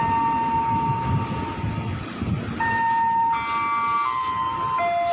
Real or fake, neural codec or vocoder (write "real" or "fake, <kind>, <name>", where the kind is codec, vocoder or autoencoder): real